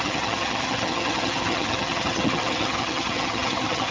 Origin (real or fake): fake